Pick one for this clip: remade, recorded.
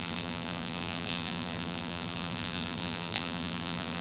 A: remade